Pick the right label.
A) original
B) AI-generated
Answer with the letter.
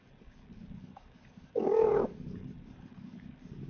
B